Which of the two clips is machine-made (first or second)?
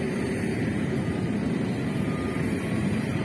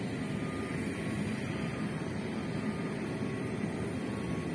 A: first